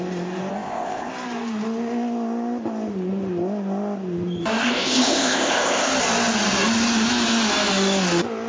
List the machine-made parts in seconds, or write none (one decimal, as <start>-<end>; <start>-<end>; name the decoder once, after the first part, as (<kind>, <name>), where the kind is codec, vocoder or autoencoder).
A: 0.5-1.1 (codec, ZipCodec); 4.6-5.9